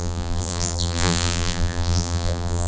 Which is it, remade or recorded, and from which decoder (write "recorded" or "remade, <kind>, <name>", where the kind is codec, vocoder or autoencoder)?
remade, vocoder, BigVGAN v2